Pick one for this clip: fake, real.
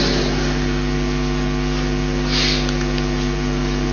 real